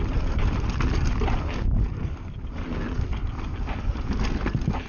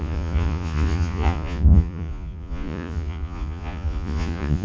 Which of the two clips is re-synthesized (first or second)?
second